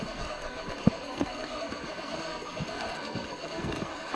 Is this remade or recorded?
remade